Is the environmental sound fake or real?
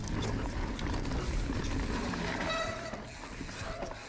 real